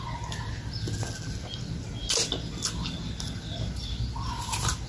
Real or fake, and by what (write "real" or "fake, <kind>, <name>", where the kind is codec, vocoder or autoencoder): real